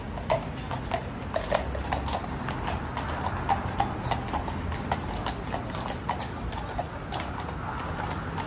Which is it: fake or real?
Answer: real